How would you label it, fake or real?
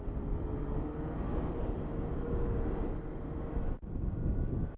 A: real